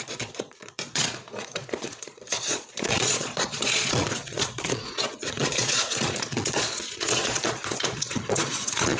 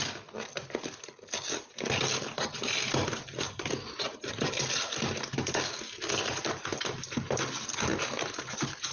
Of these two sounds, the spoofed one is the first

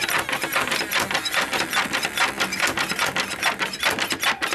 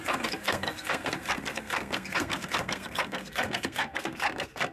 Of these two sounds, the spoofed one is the second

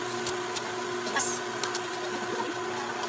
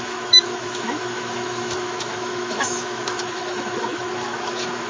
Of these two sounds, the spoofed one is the second